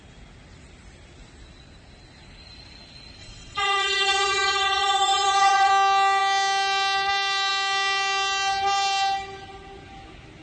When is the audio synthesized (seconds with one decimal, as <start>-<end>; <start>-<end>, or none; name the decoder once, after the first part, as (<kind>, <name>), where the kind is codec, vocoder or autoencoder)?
3.2-5.7 (vocoder, Vocos)